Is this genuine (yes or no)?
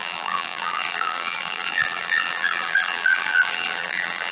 no